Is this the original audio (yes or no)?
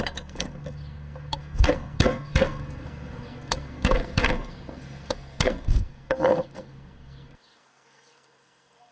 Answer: no